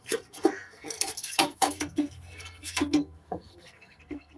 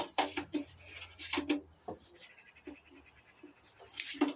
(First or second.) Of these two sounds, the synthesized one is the first